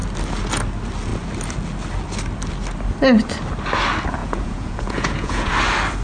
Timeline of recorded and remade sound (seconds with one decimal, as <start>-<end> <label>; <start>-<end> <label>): 0.0-4.2 recorded; 4.2-5.5 remade; 5.5-6.0 recorded